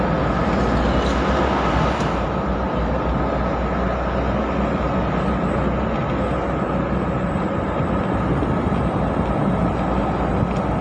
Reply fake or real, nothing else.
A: real